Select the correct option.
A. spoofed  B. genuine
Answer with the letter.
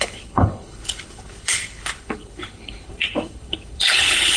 A